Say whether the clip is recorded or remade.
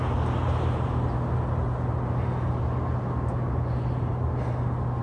recorded